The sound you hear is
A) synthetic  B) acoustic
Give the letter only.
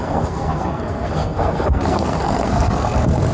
A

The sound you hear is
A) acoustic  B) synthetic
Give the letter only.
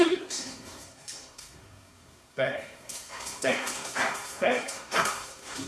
B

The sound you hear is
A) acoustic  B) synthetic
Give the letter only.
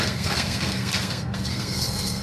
B